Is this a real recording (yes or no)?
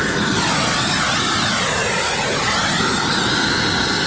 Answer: yes